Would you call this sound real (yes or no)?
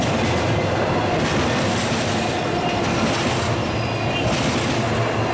yes